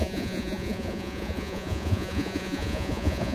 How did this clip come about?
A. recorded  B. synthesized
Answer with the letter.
B